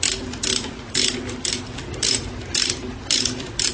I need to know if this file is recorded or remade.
recorded